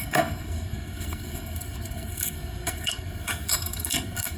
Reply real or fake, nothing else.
fake